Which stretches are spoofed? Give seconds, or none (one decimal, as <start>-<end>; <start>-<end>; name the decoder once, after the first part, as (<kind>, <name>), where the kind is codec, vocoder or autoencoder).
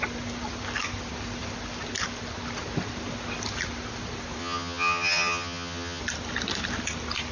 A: 4.4-6.0 (vocoder, HiFi-GAN)